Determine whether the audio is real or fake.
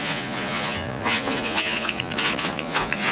fake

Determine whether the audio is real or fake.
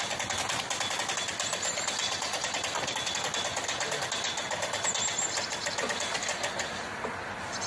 real